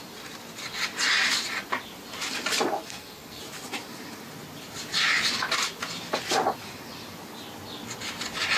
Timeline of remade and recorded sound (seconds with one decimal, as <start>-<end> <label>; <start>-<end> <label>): 0.0-2.8 recorded; 2.8-3.4 remade; 3.4-8.6 recorded